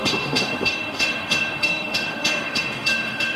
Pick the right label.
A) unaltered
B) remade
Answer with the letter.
B